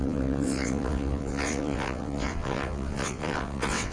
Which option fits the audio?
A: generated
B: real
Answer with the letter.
A